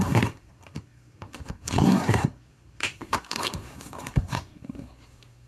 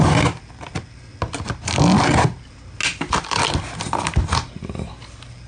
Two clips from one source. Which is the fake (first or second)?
first